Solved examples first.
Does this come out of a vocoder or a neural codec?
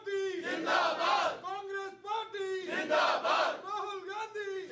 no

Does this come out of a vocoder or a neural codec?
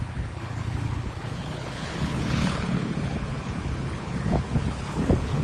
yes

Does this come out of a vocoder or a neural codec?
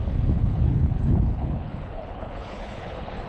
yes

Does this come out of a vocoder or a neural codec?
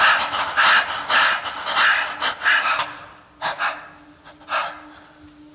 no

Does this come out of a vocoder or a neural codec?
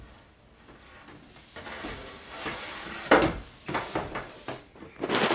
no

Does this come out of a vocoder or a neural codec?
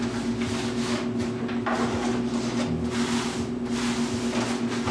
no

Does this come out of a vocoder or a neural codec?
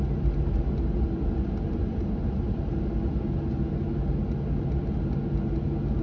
no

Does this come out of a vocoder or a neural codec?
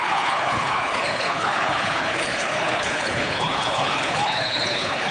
yes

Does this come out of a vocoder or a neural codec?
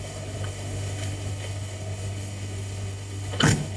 yes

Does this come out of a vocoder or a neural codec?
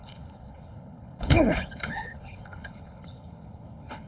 yes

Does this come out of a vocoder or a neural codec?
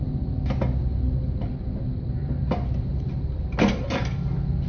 no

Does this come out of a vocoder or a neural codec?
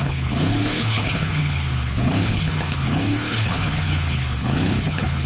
yes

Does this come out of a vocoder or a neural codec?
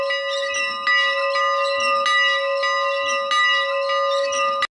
no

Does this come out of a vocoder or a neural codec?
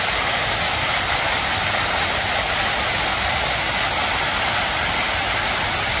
no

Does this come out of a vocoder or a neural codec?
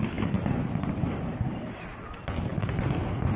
no